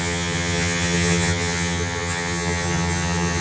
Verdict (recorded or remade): remade